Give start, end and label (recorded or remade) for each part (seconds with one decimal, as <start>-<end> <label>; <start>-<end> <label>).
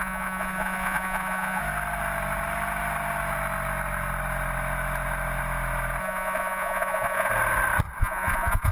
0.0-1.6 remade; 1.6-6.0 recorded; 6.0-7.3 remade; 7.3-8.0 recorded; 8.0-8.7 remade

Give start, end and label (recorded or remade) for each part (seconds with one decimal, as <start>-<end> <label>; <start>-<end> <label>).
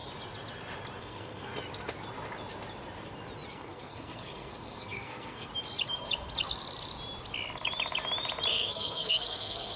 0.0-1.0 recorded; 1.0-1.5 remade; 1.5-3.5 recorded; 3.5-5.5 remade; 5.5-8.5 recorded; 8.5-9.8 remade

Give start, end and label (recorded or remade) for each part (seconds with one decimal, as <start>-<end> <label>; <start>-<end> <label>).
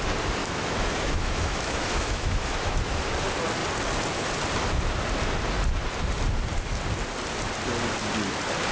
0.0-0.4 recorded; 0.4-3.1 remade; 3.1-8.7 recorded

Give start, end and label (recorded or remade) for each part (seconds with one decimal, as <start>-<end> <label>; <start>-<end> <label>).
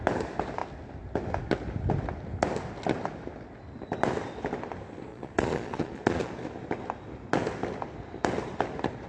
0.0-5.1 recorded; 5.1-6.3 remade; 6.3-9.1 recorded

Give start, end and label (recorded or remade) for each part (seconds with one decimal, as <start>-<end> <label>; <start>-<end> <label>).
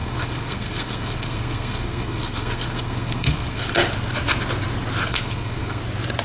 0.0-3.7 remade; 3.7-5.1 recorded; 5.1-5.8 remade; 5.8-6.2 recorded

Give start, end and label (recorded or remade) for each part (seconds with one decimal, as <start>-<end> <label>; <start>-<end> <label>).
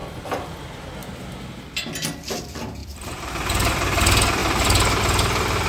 0.0-0.6 remade; 0.6-2.8 recorded; 2.8-3.3 remade; 3.3-4.4 recorded; 4.4-5.0 remade; 5.0-5.7 recorded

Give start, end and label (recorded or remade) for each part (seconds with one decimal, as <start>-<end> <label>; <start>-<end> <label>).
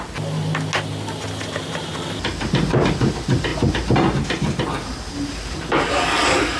0.0-6.6 recorded